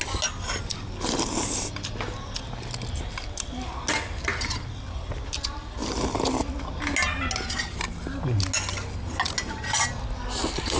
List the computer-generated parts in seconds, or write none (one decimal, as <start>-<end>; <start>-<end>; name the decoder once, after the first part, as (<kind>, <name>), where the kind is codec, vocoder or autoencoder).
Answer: none